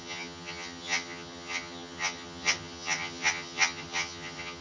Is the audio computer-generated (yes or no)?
yes